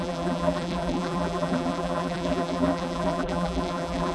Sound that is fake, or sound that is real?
fake